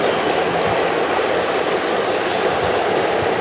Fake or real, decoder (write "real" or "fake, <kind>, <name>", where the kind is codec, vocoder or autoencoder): real